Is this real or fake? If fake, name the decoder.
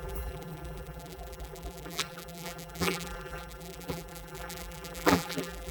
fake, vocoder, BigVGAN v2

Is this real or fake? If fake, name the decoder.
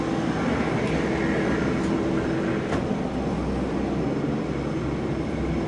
real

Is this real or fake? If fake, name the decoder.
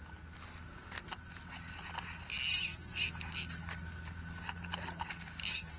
real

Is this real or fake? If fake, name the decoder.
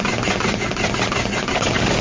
real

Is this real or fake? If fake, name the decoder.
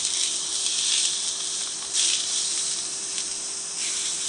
real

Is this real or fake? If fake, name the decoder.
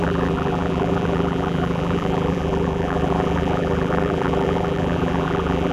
fake, vocoder, BigVGAN v2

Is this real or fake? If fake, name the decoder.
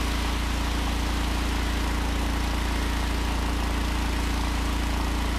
real